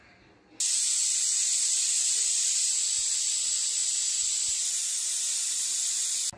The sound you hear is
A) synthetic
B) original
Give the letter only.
B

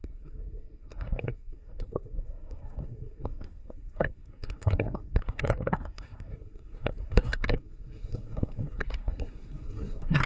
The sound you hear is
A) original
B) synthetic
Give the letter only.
B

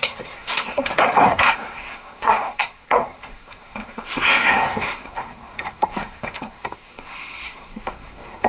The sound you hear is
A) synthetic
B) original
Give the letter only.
A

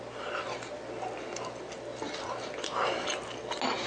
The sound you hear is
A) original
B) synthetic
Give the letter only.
A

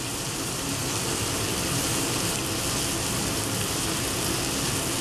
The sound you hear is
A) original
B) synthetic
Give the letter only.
A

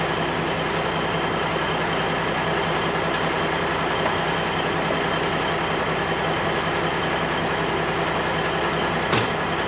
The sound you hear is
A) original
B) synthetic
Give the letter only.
A